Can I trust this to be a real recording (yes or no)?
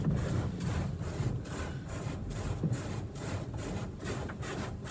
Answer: yes